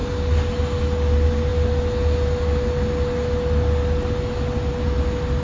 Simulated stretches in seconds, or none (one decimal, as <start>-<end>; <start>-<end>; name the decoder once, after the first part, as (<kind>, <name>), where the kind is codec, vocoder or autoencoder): none